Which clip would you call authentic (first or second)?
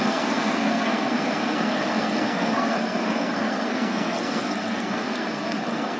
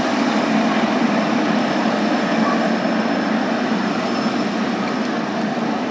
second